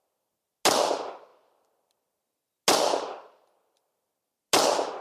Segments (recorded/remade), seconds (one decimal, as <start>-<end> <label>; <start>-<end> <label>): 0.0-5.0 recorded